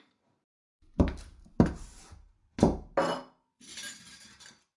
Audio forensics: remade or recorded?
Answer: recorded